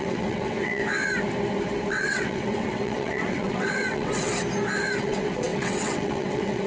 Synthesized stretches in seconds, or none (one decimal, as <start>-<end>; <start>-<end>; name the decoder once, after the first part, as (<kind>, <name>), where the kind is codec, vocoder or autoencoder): 0.0-0.8 (vocoder, WaveNeXt); 1.9-4.3; 5.0-6.7